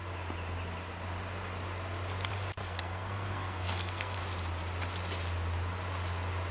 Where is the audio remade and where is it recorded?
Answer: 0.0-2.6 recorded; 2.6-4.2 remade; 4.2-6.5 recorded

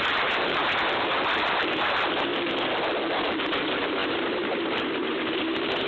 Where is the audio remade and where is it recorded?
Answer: 0.0-0.6 remade; 0.6-1.3 recorded; 1.3-2.3 remade; 2.3-3.4 recorded; 3.4-5.9 remade

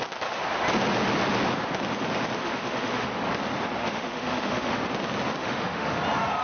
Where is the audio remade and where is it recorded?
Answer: 0.0-2.4 recorded; 2.4-3.1 remade; 3.1-3.8 recorded; 3.8-4.8 remade; 4.8-5.4 recorded; 5.4-6.0 remade; 6.0-6.4 recorded

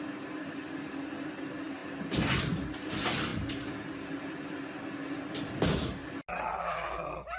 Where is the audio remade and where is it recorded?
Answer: 0.0-7.4 recorded

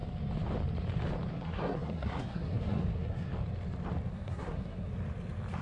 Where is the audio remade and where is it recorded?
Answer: 0.0-1.3 recorded; 1.3-3.3 remade; 3.3-4.1 recorded; 4.1-4.9 remade; 4.9-5.6 recorded

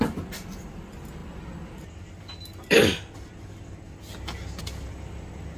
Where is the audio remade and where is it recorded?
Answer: 0.0-5.6 recorded

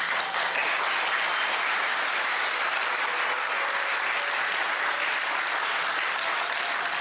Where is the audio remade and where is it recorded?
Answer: 0.0-7.0 recorded

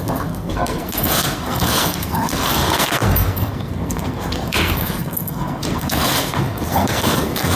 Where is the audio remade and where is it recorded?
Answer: 0.0-7.6 remade